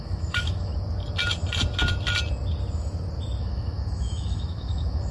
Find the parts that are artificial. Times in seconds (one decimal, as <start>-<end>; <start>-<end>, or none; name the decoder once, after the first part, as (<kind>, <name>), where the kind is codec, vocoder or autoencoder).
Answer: 0.0-0.7 (autoencoder, DAC-VAE); 3.4-5.1